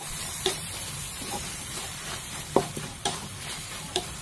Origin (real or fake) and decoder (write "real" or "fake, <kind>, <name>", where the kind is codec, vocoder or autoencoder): fake, vocoder, BigVGAN v2